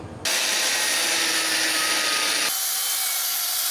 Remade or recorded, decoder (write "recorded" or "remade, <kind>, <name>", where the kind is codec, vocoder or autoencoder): recorded